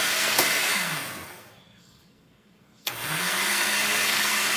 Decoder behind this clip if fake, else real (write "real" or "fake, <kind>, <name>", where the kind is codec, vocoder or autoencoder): fake, codec, SNAC